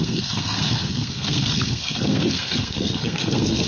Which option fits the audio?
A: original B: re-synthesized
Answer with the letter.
B